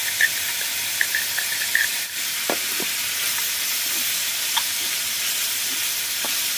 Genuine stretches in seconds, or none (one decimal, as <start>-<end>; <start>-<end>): 0.5-1.9; 3.4-6.6